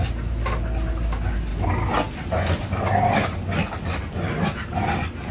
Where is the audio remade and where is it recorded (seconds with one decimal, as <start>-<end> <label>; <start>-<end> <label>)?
0.0-5.3 recorded